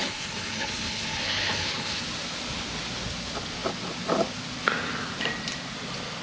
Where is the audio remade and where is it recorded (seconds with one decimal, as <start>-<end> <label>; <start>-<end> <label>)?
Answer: 0.0-2.0 remade; 2.0-6.2 recorded